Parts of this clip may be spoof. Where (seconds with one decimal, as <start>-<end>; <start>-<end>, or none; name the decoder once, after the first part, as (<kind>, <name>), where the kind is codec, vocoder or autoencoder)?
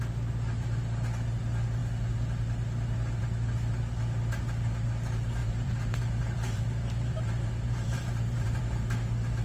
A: 5.4-8.6 (vocoder, BigVGAN v2)